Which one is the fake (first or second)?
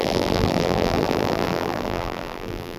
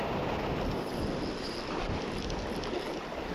first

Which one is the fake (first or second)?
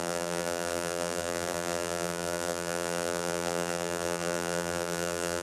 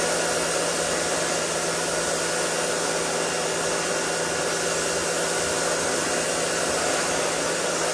first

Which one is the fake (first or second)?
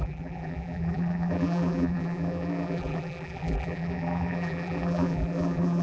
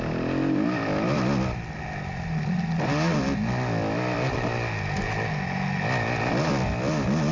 first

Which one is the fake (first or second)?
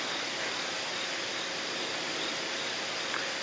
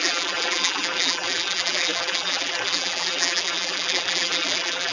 second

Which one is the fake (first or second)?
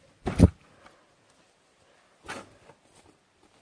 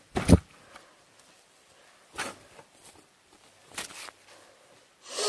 second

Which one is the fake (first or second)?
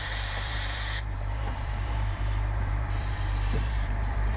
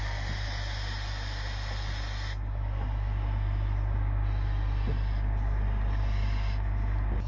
first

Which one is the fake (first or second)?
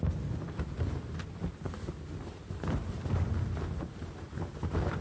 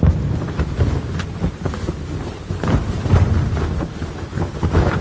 second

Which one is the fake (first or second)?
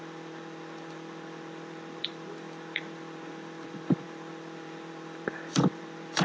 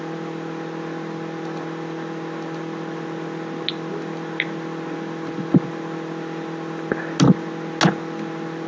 first